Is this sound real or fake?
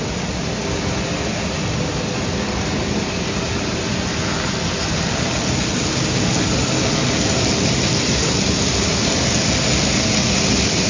real